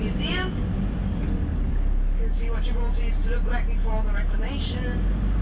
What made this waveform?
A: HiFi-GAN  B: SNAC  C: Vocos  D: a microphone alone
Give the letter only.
D